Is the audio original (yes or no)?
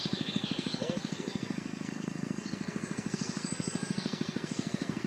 no